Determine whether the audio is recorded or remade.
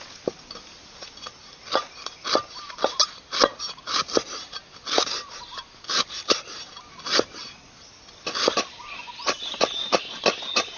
recorded